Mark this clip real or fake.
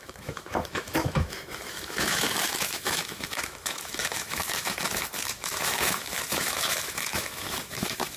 fake